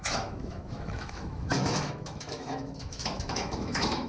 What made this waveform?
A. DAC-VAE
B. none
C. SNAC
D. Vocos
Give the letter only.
A